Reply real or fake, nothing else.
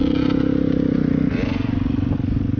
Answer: real